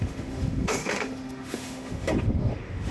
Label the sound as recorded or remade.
remade